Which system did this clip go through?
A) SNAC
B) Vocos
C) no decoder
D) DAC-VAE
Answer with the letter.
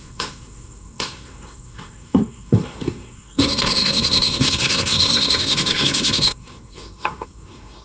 A